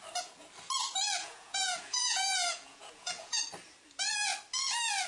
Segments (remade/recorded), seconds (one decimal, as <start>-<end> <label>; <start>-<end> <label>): 0.0-1.2 recorded; 1.2-3.4 remade; 3.4-5.1 recorded